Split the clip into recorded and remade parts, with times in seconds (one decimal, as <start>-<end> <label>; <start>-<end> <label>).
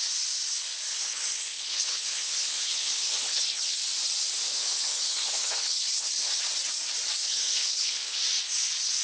0.0-0.9 recorded; 0.9-3.8 remade; 3.8-4.5 recorded; 4.5-6.3 remade; 6.3-7.2 recorded; 7.2-8.2 remade; 8.2-9.0 recorded